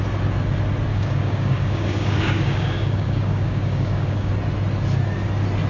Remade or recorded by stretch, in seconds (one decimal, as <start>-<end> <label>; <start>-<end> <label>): 0.0-0.9 recorded; 0.9-4.3 remade; 4.3-5.7 recorded